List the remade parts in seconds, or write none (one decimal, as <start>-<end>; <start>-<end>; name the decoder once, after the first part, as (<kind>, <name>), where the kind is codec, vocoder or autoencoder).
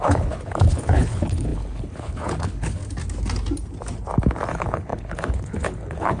0.0-2.8 (codec, HILCodec); 4.5-6.2